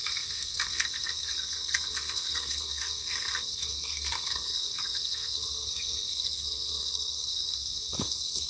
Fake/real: fake